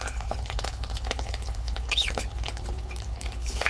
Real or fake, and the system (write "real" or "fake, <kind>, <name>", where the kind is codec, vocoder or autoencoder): fake, codec, HILCodec